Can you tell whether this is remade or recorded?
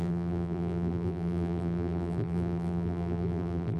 remade